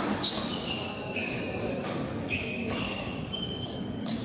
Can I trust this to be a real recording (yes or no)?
no